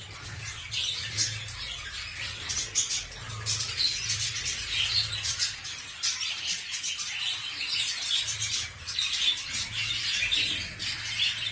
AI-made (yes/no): no